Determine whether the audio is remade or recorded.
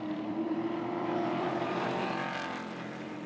remade